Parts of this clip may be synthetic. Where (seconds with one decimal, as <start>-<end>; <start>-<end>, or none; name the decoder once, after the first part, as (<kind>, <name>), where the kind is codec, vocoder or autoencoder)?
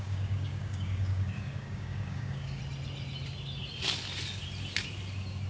0.0-2.6 (codec, DAC)